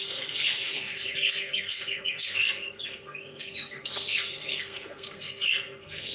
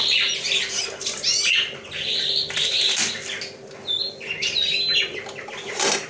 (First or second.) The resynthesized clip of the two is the first